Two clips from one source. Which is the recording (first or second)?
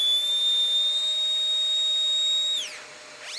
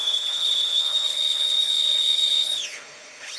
first